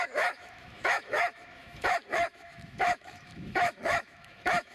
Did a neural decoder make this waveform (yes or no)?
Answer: yes